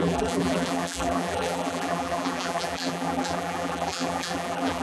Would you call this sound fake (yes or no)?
yes